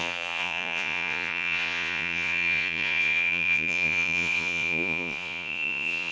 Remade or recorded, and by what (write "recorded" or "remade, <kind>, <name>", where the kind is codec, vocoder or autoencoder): remade, vocoder, Vocos